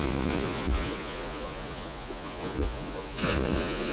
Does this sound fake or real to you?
fake